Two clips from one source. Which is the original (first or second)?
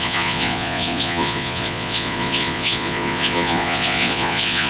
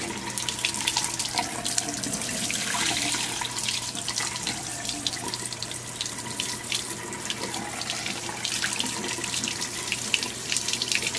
second